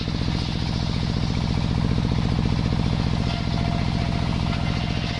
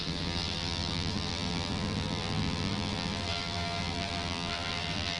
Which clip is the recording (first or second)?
first